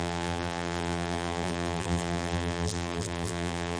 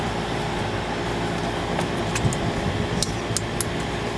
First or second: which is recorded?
second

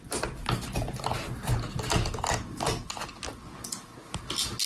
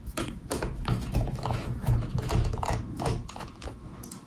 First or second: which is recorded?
first